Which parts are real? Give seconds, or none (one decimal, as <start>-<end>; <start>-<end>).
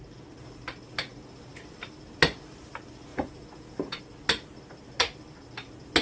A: 0.0-3.1; 4.0-6.0